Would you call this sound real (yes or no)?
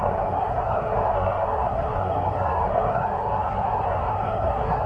no